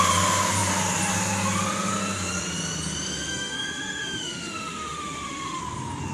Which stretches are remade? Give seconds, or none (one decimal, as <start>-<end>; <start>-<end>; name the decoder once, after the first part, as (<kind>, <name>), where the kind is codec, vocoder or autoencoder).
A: 3.3-5.6 (autoencoder, DAC-VAE)